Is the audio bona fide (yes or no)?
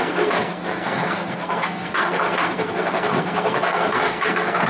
no